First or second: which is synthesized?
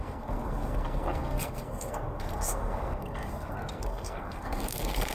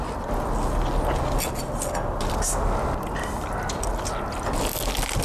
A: first